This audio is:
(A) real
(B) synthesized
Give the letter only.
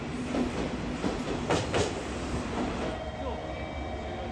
A